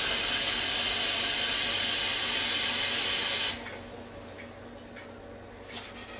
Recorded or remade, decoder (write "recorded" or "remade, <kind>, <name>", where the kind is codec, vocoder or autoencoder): recorded